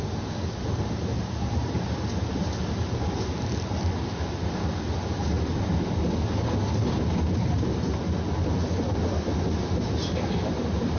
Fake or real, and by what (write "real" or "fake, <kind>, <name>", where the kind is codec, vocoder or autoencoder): real